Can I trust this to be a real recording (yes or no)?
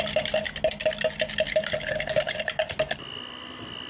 yes